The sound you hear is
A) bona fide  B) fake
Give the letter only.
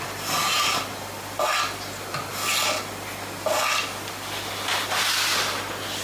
A